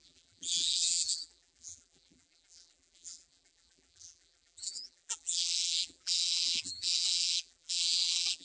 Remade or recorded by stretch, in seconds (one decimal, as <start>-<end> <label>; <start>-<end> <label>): 0.0-8.4 remade